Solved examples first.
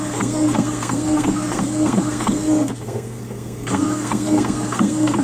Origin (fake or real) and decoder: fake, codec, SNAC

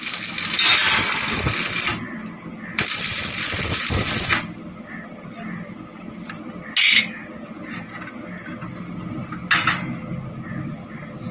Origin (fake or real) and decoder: real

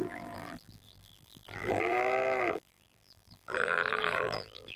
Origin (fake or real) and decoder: fake, vocoder, BigVGAN v2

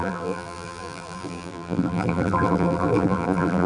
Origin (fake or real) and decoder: fake, vocoder, BigVGAN v2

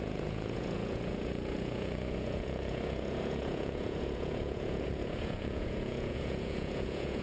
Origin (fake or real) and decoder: fake, vocoder, Vocos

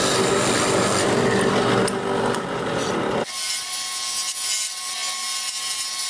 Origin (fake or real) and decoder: real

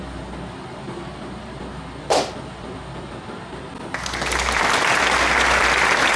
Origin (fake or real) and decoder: real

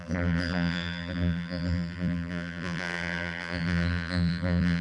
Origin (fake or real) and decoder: fake, vocoder, BigVGAN v2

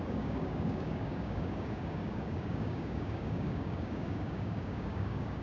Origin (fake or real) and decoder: fake, codec, DAC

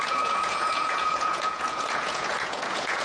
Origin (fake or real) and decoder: fake, vocoder, Vocos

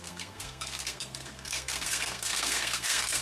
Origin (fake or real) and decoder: fake, codec, SNAC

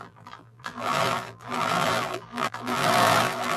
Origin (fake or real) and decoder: fake, vocoder, BigVGAN v2